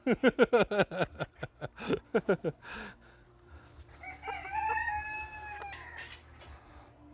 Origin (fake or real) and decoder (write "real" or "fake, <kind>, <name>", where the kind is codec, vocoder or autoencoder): real